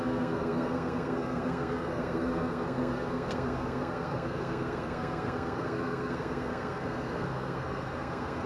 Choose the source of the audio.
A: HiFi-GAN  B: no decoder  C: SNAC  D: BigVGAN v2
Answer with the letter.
C